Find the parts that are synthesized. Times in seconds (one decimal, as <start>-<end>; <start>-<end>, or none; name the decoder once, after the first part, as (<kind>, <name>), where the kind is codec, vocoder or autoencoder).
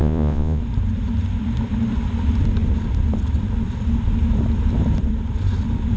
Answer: 0.0-0.6 (vocoder, Vocos)